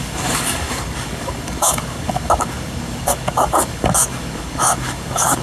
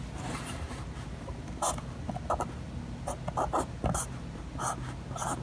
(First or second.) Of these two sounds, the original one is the second